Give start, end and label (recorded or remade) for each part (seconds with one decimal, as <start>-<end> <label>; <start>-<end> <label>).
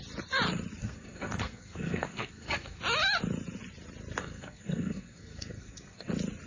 0.0-0.8 recorded; 0.8-2.8 remade; 2.8-4.2 recorded; 4.2-6.1 remade; 6.1-6.5 recorded